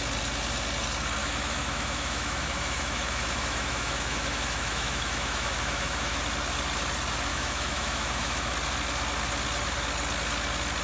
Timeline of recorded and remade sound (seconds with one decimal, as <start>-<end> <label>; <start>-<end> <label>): 0.0-1.2 recorded; 1.2-6.2 remade; 6.2-7.3 recorded; 7.3-8.5 remade; 8.5-10.8 recorded